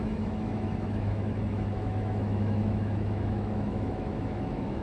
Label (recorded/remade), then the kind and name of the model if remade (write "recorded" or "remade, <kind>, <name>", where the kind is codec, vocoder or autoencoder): remade, autoencoder, DAC-VAE